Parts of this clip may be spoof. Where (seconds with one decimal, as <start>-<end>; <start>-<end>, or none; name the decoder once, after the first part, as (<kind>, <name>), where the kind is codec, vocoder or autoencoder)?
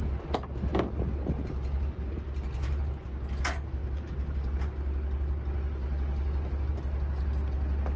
3.8-4.6 (vocoder, BigVGAN v2)